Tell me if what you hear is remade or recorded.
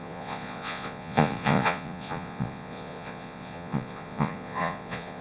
remade